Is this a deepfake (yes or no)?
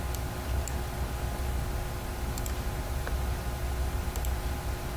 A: no